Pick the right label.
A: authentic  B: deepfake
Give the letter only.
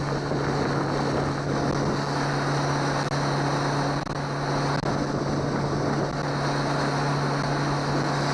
A